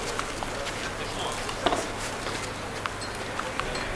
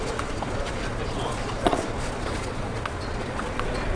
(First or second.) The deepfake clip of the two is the second